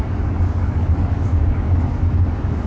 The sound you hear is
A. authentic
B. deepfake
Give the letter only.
B